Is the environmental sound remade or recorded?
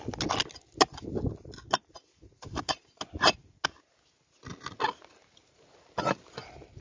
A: recorded